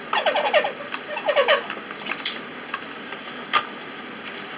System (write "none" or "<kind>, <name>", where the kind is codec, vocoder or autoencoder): none